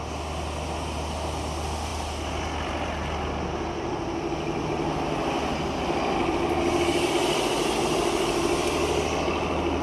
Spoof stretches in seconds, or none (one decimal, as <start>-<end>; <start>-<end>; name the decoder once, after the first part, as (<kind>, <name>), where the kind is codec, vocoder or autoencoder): none